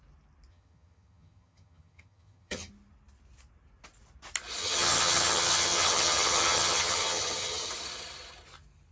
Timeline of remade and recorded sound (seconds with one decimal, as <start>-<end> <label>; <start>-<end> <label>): 0.0-0.5 recorded; 0.5-2.7 remade; 2.7-4.6 recorded; 4.6-7.7 remade; 7.7-8.9 recorded